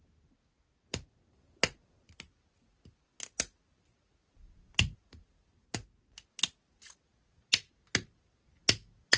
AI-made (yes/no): no